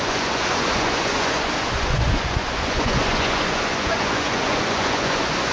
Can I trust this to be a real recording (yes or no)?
no